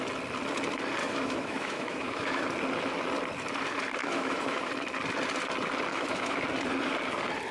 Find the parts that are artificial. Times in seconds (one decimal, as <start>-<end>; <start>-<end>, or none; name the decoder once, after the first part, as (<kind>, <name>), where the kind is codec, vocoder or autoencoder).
1.0-2.4 (autoencoder, DAC-VAE); 4.0-4.7; 5.9-6.4

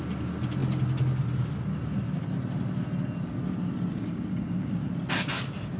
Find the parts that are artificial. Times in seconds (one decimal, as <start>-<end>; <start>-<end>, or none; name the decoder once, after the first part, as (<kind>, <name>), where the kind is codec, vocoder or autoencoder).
3.9-4.9 (codec, DAC)

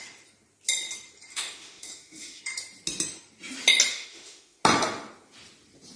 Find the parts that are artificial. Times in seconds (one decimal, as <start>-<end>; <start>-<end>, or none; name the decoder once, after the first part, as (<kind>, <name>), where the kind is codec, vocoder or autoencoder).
1.3-2.4 (autoencoder, DAC-VAE); 3.9-4.6

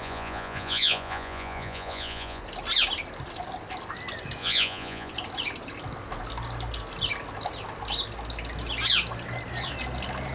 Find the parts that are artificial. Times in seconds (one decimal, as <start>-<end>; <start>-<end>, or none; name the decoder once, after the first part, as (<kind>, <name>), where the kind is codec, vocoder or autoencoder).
0.0-2.4 (vocoder, Vocos); 4.4-5.1

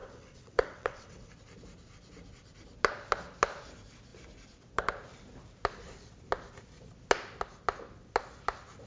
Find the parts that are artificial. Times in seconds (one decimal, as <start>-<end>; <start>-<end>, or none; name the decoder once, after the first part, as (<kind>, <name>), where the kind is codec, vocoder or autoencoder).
0.0-1.3 (vocoder, WaveNeXt)

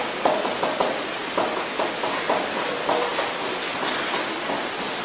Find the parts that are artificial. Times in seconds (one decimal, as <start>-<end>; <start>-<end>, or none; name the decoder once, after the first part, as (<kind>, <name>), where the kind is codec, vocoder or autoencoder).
none

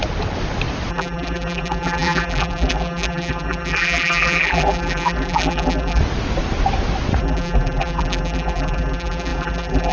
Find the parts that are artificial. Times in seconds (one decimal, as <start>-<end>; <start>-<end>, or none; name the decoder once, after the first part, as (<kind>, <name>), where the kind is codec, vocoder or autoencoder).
0.9-6.0 (vocoder, BigVGAN v2); 7.2-9.9

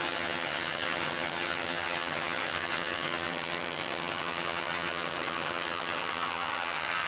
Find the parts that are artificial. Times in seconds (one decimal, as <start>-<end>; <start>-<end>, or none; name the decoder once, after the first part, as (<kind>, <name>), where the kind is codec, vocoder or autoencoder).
0.0-7.1 (vocoder, HiFi-GAN)